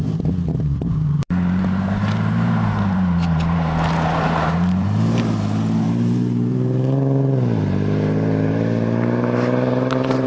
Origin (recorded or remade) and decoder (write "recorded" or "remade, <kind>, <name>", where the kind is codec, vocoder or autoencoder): remade, vocoder, BigVGAN v2